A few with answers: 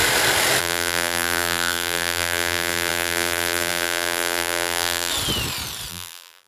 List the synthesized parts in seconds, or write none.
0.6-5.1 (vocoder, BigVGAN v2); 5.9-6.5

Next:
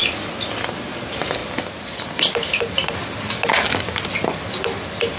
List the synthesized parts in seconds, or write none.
0.0-0.8 (vocoder, BigVGAN v2); 1.4-4.5

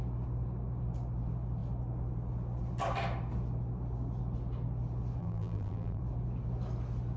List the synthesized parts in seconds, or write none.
5.2-6.0 (vocoder, BigVGAN v2)

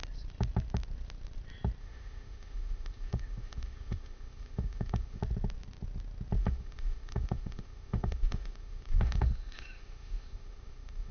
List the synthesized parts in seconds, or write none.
1.8-5.2 (autoencoder, DAC-VAE); 6.4-11.1

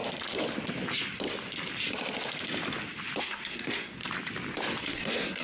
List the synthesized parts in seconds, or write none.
3.2-4.0 (codec, SNAC); 4.8-5.4

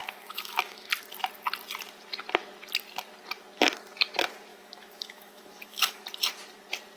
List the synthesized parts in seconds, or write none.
0.0-0.9 (autoencoder, DAC-VAE); 4.5-6.0

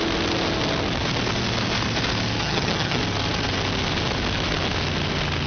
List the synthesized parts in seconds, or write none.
2.4-3.0 (vocoder, HiFi-GAN)

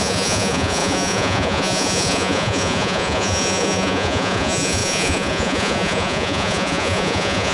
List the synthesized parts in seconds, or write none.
0.0-7.5 (vocoder, Vocos)